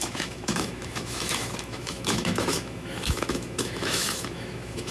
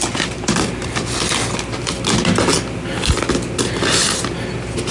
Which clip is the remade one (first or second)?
first